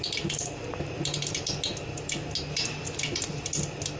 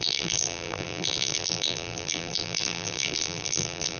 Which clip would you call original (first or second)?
first